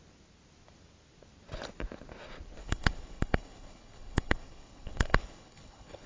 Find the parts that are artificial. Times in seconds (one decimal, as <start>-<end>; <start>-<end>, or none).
2.6-6.1